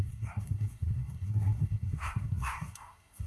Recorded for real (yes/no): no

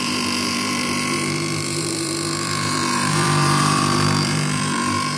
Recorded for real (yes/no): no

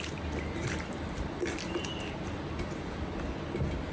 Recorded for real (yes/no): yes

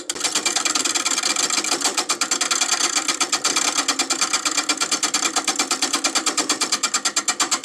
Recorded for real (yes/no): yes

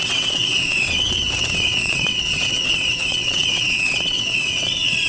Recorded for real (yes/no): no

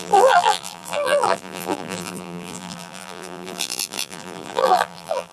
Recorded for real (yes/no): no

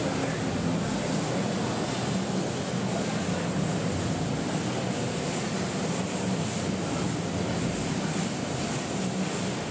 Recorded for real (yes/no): yes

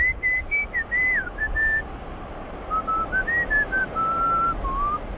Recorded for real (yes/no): yes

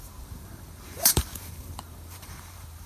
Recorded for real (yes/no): no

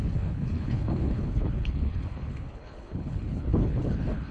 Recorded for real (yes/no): no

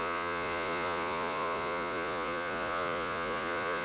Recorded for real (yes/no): no